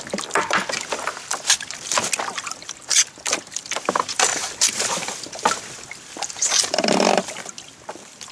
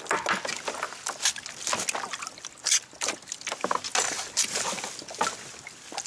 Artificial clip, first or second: first